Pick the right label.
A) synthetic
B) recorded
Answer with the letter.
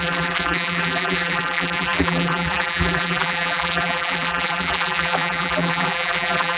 A